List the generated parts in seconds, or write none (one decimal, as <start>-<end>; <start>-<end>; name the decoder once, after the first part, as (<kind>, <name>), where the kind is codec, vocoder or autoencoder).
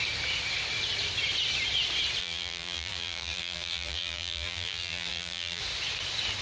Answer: 2.2-5.6 (vocoder, BigVGAN v2)